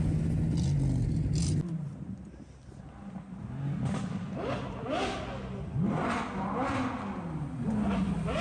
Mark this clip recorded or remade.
recorded